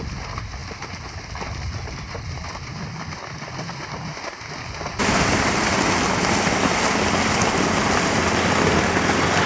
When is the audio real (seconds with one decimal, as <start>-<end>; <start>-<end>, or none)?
0.0-9.5